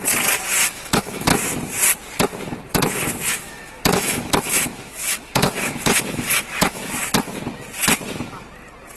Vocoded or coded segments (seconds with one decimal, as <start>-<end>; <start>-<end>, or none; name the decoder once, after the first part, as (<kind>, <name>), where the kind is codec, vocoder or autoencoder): 0.6-1.3 (autoencoder, DAC-VAE); 3.3-6.9